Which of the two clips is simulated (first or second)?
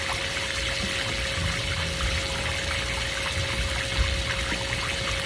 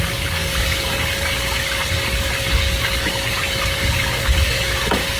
second